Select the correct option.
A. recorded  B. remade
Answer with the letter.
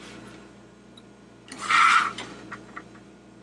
A